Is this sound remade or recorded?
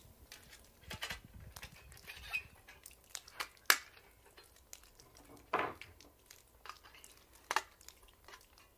recorded